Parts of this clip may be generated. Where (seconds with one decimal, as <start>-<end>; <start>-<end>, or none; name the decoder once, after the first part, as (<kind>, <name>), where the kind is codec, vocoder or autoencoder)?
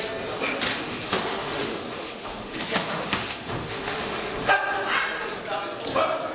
0.7-4.5 (autoencoder, DAC-VAE)